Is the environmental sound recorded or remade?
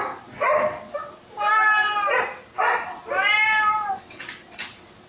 recorded